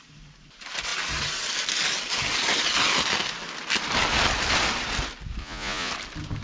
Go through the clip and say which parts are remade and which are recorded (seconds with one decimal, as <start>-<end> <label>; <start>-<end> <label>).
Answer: 0.0-5.4 recorded; 5.4-5.9 remade; 5.9-6.4 recorded